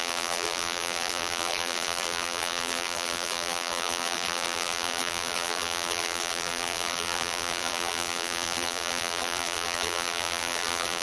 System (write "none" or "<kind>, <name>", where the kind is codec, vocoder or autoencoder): vocoder, BigVGAN v2